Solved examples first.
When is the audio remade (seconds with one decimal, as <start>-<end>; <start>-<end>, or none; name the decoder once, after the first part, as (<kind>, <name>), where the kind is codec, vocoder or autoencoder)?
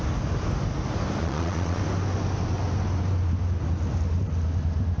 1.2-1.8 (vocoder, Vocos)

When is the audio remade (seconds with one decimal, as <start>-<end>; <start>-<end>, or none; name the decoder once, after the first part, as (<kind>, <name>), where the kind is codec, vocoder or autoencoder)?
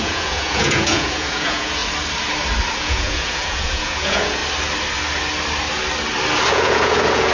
0.0-1.8 (vocoder, Vocos); 2.8-4.4; 6.5-7.3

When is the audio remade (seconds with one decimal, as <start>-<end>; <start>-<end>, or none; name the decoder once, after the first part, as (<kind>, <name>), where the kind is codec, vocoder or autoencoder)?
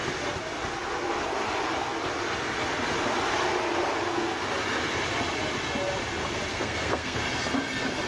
6.5-7.2 (codec, SNAC)